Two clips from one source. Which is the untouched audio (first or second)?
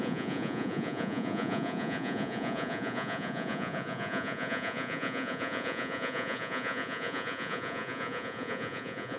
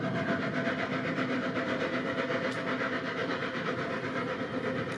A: second